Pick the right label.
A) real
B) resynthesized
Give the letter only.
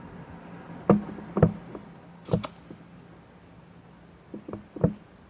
A